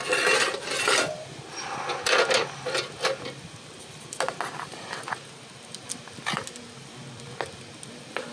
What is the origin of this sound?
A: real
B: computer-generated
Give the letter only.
A